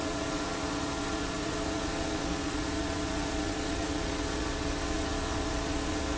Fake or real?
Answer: fake